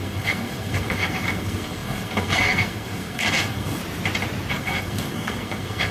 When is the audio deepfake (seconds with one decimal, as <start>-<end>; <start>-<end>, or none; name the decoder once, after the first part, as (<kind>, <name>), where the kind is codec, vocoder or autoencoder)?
0.0-3.8 (codec, SNAC); 4.5-5.9